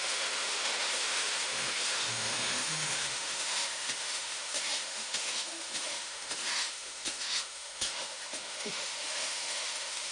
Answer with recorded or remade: remade